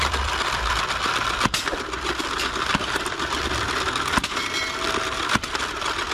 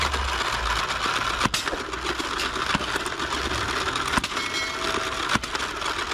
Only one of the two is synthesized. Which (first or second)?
first